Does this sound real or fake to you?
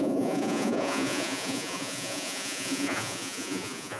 fake